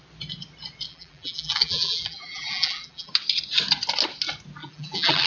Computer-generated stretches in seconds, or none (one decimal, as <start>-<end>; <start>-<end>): 0.9-3.1; 4.6-5.3